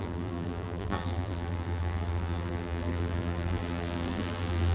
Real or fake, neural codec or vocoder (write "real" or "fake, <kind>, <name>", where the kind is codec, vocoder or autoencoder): fake, vocoder, BigVGAN v2